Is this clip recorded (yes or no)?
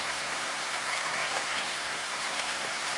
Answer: no